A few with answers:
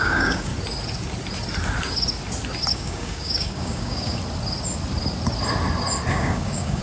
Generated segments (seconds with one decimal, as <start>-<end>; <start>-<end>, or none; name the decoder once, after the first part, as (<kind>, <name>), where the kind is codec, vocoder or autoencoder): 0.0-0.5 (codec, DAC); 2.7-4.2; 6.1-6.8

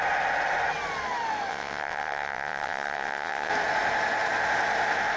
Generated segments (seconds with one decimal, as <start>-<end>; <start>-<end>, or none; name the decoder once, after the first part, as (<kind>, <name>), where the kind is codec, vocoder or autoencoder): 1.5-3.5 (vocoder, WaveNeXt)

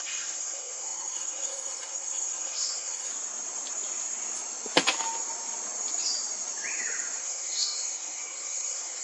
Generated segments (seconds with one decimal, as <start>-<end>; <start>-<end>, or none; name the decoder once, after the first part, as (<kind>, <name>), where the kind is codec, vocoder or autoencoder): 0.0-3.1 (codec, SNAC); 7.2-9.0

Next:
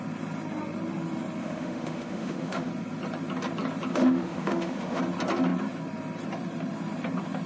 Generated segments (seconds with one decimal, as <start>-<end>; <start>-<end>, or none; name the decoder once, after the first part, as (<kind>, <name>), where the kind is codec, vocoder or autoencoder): 1.4-2.7 (autoencoder, DAC-VAE); 3.9-5.0